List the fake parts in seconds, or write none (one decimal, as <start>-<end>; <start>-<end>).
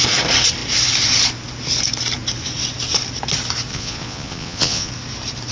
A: 3.7-4.9